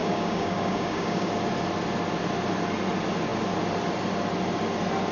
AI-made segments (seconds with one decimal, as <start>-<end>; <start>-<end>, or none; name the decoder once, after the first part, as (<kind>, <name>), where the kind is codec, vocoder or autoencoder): 0.0-1.3 (codec, DAC)